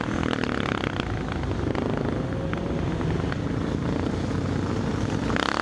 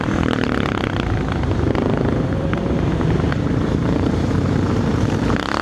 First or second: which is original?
first